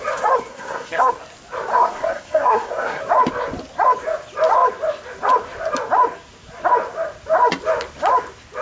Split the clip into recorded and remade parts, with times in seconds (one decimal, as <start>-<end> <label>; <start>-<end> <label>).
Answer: 0.0-0.5 recorded; 0.5-1.1 remade; 1.1-1.7 recorded; 1.7-3.0 remade; 3.0-8.6 recorded